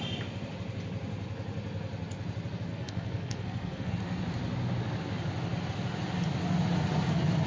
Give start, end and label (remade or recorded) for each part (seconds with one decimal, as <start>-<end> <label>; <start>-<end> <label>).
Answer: 0.0-2.7 recorded; 2.7-3.9 remade; 3.9-7.5 recorded